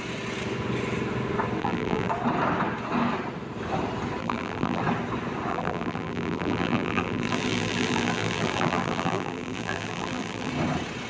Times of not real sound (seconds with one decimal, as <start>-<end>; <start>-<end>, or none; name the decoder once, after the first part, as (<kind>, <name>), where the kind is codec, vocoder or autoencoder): 1.6-2.1 (vocoder, BigVGAN v2); 4.2-4.8; 5.5-10.5